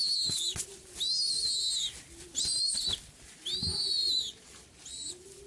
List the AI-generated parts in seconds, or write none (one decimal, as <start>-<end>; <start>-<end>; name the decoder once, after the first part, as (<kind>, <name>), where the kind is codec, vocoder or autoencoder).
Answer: 2.5-4.5 (vocoder, BigVGAN v2)